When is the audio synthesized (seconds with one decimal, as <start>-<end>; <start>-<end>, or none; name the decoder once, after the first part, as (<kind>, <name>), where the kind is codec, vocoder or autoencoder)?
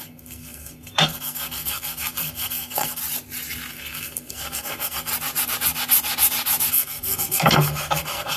0.0-3.0 (codec, SNAC); 3.7-5.1; 6.7-8.4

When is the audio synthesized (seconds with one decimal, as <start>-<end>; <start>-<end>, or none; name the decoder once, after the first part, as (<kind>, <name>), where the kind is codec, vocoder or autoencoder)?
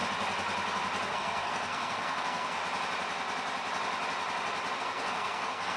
1.1-2.6 (codec, SNAC); 4.8-5.8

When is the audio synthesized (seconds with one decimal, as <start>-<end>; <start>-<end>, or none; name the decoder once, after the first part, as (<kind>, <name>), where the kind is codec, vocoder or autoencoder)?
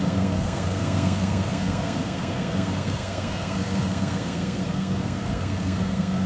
0.0-6.3 (codec, SNAC)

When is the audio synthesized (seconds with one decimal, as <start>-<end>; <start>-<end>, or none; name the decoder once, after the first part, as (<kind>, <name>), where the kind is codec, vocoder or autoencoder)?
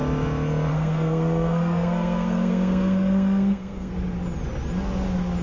0.7-3.9 (codec, SNAC)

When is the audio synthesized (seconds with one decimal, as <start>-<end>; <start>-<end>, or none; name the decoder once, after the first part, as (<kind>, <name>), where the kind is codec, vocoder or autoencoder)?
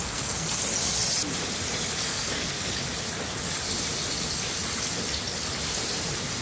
0.0-0.6 (codec, SNAC); 2.0-2.7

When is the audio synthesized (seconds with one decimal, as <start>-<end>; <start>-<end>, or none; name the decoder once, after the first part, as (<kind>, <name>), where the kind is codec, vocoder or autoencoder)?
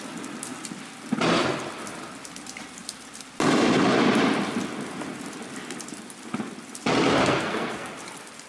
7.2-8.0 (codec, SNAC)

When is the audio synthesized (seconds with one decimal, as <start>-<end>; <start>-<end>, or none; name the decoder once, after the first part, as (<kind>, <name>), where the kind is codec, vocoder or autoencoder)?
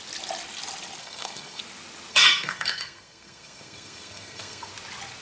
1.0-1.6 (codec, SNAC); 2.1-4.7